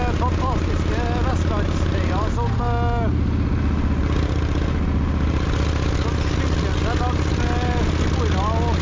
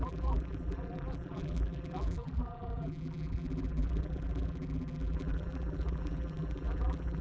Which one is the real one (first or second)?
first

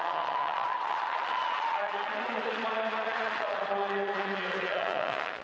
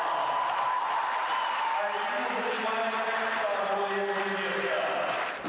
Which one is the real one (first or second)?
second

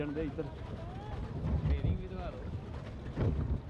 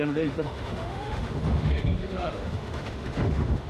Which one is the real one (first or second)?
first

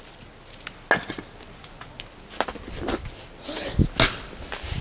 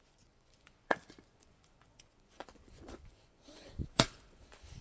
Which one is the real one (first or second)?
first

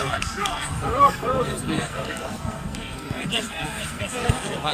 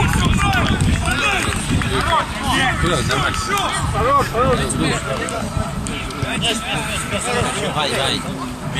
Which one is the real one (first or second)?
second